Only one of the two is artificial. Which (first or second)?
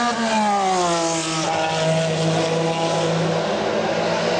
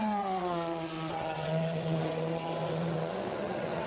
second